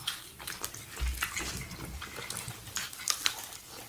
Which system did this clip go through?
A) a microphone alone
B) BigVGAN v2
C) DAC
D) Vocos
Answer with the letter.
A